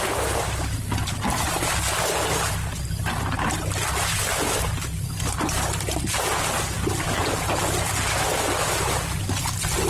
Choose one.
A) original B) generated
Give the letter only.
A